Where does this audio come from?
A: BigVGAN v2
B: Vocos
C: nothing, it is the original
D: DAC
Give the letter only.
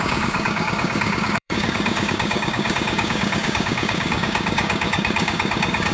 D